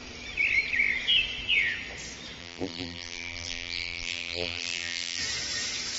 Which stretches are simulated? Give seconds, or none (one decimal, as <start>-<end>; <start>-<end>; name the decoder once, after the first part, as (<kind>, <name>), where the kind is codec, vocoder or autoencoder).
2.4-5.2 (vocoder, BigVGAN v2)

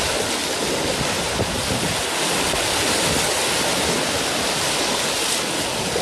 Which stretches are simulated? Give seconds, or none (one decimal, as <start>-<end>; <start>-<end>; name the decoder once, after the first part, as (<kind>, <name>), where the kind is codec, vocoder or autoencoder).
0.4-1.1 (vocoder, BigVGAN v2); 1.6-5.2

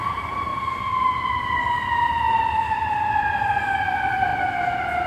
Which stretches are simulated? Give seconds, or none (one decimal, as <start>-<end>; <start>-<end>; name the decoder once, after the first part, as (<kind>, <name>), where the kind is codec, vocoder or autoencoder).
0.0-0.5 (vocoder, BigVGAN v2); 2.4-4.3

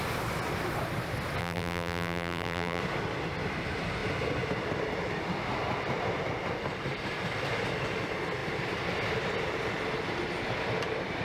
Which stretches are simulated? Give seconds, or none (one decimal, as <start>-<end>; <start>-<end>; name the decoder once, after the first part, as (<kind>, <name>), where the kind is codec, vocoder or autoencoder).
1.4-2.8 (vocoder, BigVGAN v2)

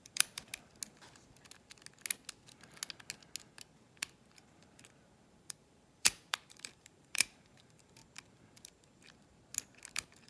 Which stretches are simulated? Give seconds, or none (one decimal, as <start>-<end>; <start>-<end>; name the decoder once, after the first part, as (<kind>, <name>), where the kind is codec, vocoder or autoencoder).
0.0-0.5 (vocoder, BigVGAN v2); 4.0-8.0; 9.9-10.3

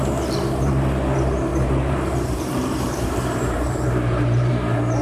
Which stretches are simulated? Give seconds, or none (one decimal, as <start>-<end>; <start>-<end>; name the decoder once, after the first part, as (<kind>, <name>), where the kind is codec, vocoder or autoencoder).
1.5-4.5 (vocoder, BigVGAN v2)

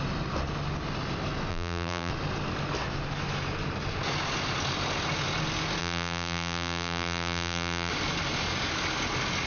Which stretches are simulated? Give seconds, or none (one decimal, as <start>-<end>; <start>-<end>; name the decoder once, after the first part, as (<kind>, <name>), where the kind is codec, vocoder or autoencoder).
1.5-2.1 (vocoder, BigVGAN v2); 5.8-7.9

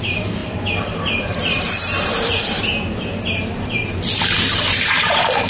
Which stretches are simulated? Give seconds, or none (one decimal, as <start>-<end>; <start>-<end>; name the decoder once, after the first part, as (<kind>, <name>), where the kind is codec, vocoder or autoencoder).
0.0-5.5 (vocoder, BigVGAN v2)